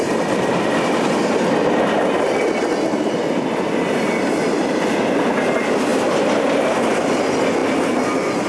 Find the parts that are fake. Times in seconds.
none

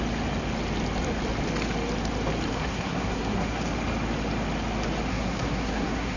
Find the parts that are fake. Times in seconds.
2.5-3.6; 5.1-6.2